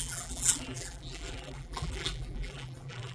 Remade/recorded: remade